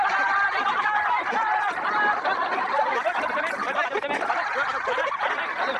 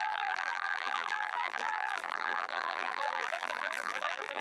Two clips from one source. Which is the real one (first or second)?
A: first